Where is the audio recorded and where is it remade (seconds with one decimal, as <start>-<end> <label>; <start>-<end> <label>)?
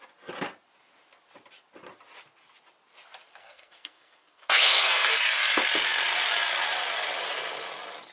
0.0-3.4 recorded; 3.4-5.2 remade; 5.2-8.1 recorded